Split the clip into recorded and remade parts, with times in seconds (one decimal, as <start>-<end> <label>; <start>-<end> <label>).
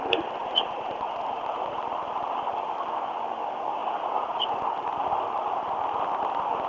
0.0-0.4 recorded; 0.4-1.8 remade; 1.8-3.8 recorded; 3.8-4.6 remade; 4.6-6.7 recorded